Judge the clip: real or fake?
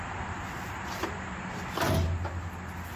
real